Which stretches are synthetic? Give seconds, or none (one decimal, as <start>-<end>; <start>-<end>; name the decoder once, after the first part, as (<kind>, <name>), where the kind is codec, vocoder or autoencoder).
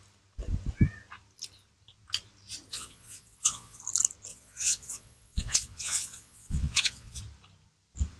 2.7-3.8 (vocoder, Vocos); 4.3-7.2